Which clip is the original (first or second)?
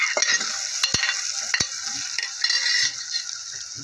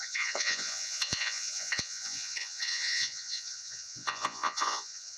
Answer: first